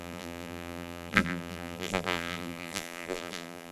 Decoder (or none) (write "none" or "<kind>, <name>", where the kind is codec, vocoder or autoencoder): vocoder, BigVGAN v2